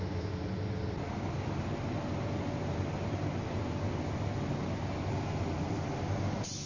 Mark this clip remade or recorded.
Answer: recorded